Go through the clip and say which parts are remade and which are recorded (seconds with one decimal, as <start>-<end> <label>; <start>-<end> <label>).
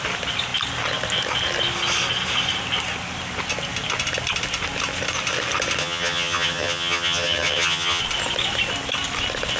0.0-5.8 recorded; 5.8-8.0 remade; 8.0-9.6 recorded